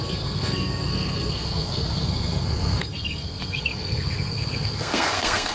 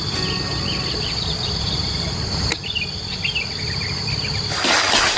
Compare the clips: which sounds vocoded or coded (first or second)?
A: first